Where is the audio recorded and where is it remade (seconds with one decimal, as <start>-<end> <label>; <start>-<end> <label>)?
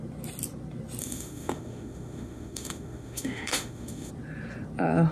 0.0-1.0 recorded; 1.0-4.1 remade; 4.1-5.1 recorded